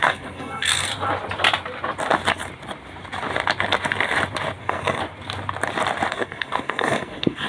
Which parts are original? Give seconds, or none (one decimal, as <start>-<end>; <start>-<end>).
0.9-4.6; 5.0-6.1